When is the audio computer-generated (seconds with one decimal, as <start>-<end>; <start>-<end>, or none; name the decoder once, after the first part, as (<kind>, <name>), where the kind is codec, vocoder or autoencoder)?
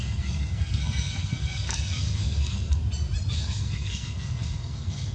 0.0-2.8 (codec, SNAC); 3.3-5.1